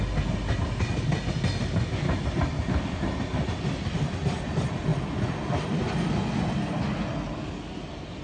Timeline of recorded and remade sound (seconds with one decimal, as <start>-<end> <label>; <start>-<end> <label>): 0.0-8.2 recorded